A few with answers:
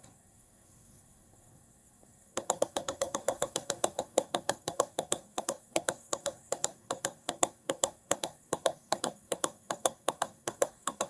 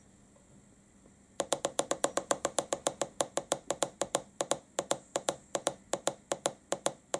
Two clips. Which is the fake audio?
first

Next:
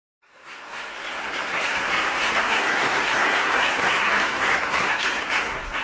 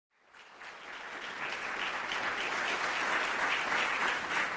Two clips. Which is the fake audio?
first